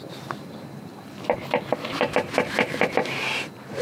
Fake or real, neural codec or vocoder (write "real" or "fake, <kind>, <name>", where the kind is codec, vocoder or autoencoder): real